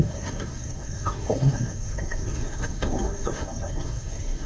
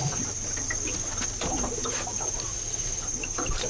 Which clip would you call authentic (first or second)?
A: second